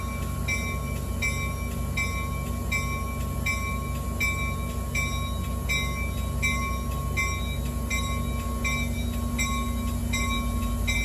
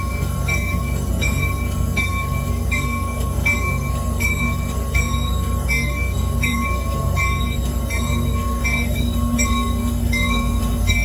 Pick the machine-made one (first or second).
second